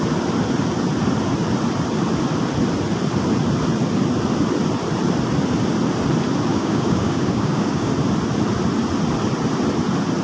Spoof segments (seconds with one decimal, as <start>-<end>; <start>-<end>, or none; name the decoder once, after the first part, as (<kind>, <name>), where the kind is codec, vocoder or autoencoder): 6.5-7.9 (codec, DAC)